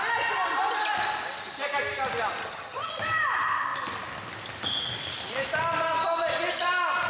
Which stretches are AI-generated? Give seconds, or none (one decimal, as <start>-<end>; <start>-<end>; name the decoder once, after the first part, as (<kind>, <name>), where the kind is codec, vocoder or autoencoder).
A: 2.4-2.9 (vocoder, HiFi-GAN)